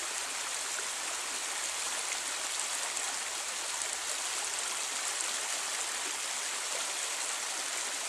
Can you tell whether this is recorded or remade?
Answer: recorded